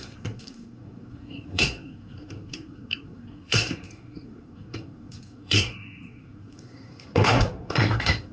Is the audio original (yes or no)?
no